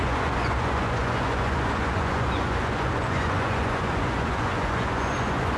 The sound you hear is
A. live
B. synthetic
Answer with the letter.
B